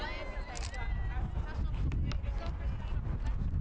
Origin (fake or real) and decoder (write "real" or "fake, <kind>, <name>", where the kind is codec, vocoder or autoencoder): real